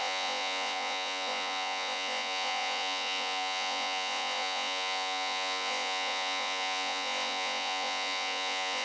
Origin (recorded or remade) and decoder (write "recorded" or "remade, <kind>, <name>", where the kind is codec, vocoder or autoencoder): remade, vocoder, Vocos